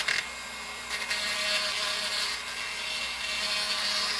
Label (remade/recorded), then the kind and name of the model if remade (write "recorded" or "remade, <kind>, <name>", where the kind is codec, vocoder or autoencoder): recorded